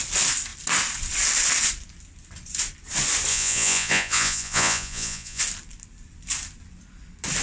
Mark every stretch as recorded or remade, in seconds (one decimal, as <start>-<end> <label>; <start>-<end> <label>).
0.0-3.3 recorded; 3.3-5.4 remade; 5.4-7.4 recorded